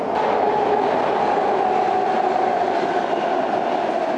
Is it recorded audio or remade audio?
recorded